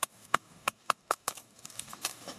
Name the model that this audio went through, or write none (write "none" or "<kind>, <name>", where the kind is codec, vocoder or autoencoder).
codec, DAC